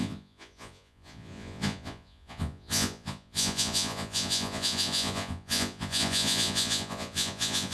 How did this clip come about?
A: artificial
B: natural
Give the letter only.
A